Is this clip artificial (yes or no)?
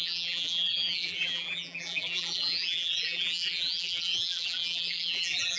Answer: yes